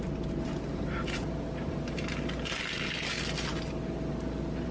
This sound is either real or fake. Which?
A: real